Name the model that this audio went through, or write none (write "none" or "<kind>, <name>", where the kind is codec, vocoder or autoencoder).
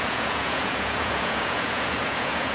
vocoder, Vocos